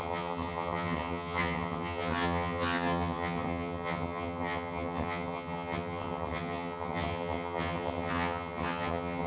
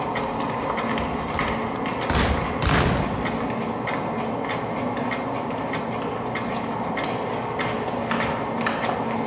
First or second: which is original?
second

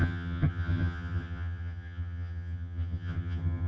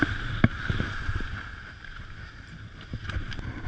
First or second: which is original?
second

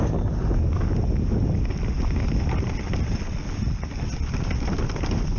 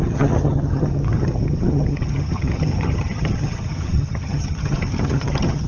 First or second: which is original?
first